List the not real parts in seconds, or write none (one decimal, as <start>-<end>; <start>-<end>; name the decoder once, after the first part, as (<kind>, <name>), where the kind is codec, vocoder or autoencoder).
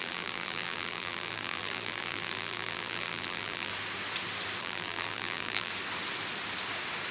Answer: 0.0-3.7 (vocoder, BigVGAN v2); 4.6-5.7